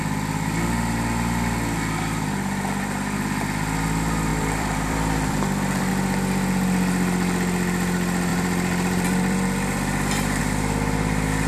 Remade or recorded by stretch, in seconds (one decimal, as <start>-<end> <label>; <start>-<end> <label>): 0.0-4.3 recorded; 4.3-5.9 remade; 5.9-8.3 recorded; 8.3-10.4 remade; 10.4-11.5 recorded